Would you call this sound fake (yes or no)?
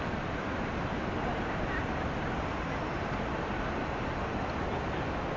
no